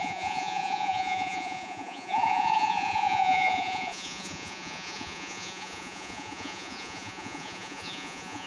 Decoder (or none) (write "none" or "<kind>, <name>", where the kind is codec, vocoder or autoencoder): vocoder, Vocos